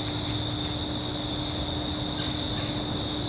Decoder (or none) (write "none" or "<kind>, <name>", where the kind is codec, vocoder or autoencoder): none